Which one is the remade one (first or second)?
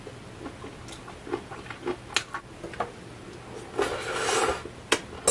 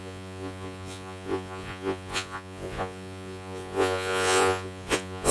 second